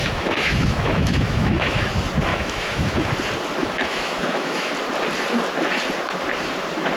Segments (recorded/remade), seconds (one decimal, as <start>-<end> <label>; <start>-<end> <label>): 0.0-1.9 remade; 1.9-2.3 recorded; 2.3-3.1 remade; 3.1-3.6 recorded; 3.6-4.7 remade; 4.7-7.0 recorded